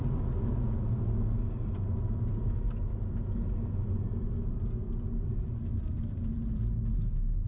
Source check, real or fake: real